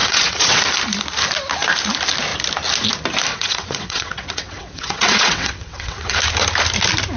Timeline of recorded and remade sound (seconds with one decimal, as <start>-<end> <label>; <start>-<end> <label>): 0.0-0.6 remade; 0.6-3.3 recorded; 3.3-6.2 remade; 6.2-7.2 recorded